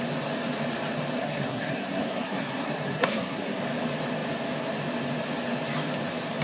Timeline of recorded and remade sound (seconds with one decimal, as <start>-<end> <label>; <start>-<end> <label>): 0.0-1.2 recorded; 1.2-3.6 remade; 3.6-6.4 recorded